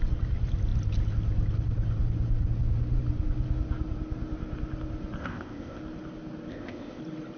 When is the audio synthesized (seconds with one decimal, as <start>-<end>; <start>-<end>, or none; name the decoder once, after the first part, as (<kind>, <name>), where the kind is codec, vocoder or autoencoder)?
5.2-5.8 (codec, ZipCodec); 6.5-7.0